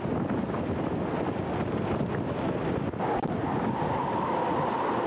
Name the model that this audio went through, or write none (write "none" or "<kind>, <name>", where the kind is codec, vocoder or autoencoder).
none